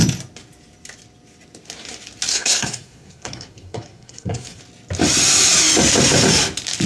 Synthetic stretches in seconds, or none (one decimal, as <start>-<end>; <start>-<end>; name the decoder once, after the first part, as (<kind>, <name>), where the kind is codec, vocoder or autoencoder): 2.3-4.6 (codec, SNAC)